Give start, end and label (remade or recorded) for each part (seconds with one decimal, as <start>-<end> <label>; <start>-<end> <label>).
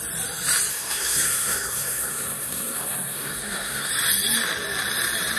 0.0-0.7 recorded; 0.7-3.9 remade; 3.9-5.4 recorded